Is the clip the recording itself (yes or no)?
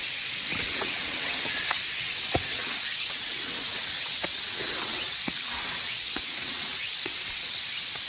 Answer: no